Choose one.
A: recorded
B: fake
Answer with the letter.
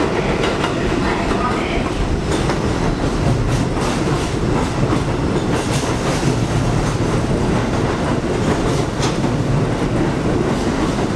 A